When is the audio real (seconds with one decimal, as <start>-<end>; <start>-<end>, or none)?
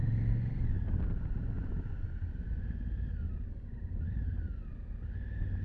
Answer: 0.0-5.6